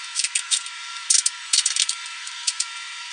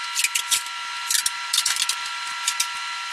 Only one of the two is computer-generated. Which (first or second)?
first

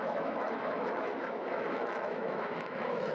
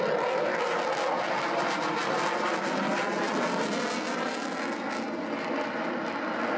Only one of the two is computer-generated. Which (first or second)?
first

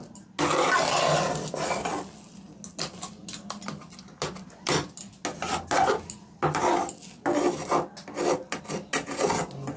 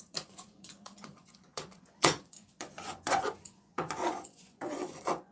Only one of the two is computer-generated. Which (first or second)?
second